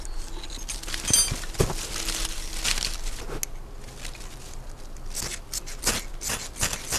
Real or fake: real